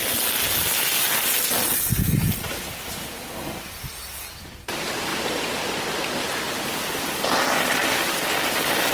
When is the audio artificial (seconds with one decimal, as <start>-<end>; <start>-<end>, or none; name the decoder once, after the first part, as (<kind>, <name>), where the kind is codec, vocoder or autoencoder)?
5.1-5.6 (vocoder, BigVGAN v2)